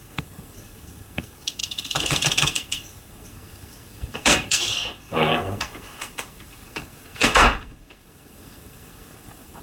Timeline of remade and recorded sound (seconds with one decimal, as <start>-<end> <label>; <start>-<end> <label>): 0.0-9.6 remade